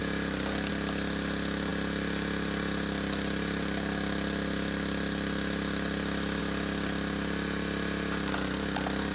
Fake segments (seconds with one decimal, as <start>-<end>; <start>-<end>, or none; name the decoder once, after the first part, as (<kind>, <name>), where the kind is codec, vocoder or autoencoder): none